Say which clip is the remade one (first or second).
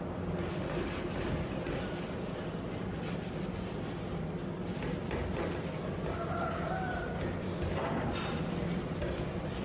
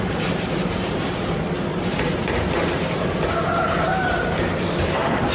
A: second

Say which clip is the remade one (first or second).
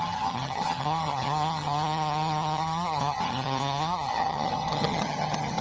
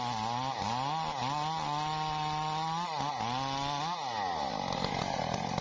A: first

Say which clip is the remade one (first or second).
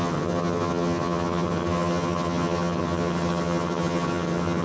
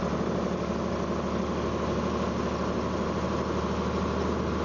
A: first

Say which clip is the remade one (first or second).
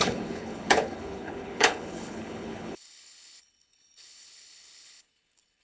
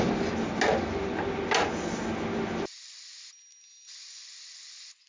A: first